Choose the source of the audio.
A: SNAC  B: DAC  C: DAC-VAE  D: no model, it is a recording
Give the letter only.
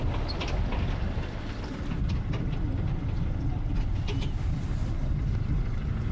D